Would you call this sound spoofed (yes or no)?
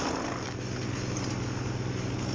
no